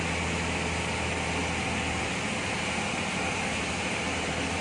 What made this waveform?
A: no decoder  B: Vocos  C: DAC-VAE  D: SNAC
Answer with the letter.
A